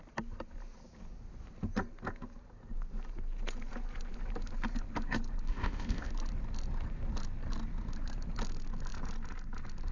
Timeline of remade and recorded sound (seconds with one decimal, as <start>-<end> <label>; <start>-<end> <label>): 0.0-5.5 recorded; 5.5-6.1 remade; 6.1-9.9 recorded